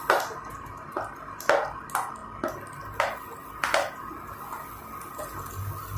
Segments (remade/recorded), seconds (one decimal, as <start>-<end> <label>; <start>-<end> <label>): 0.0-6.0 recorded

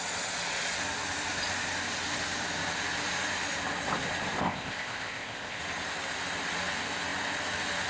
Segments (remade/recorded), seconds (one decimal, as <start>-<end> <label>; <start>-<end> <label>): 0.0-4.4 recorded; 4.4-5.6 remade; 5.6-7.9 recorded

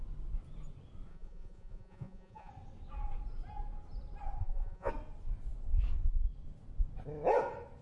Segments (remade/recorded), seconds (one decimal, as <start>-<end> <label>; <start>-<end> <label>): 0.0-1.1 recorded; 1.1-2.5 remade; 2.5-4.4 recorded; 4.4-4.9 remade; 4.9-7.8 recorded